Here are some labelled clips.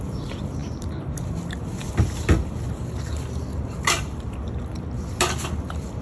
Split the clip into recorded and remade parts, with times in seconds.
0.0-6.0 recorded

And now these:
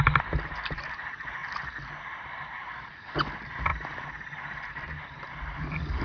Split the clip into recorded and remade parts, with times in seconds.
0.0-6.0 recorded

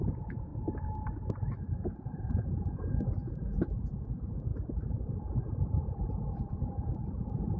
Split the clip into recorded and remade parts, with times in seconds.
0.0-0.5 remade; 0.5-1.9 recorded; 1.9-7.6 remade

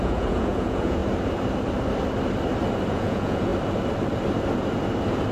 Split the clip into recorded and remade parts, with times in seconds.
0.0-1.0 remade; 1.0-2.9 recorded; 2.9-3.5 remade; 3.5-5.3 recorded

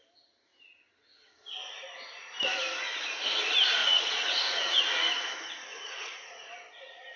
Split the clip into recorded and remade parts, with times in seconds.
0.0-3.8 recorded; 3.8-4.8 remade; 4.8-5.7 recorded; 5.7-6.5 remade; 6.5-7.2 recorded

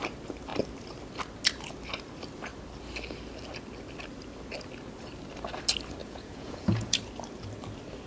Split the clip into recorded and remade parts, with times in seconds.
0.0-6.0 recorded; 6.0-7.0 remade; 7.0-8.1 recorded

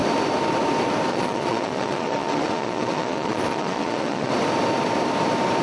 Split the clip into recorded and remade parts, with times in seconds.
0.0-1.1 recorded; 1.1-4.3 remade; 4.3-5.6 recorded

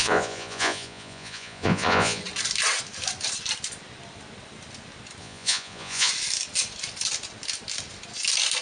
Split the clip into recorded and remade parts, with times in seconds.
0.0-2.2 remade; 2.2-5.2 recorded; 5.2-6.1 remade; 6.1-8.6 recorded